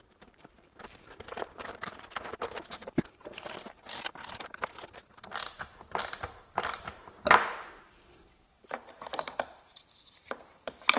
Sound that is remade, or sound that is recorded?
remade